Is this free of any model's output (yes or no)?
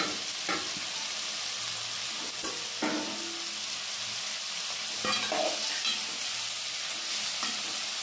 yes